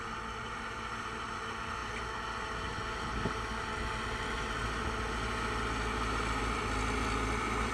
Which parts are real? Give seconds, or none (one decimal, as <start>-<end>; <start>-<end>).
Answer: 0.0-7.7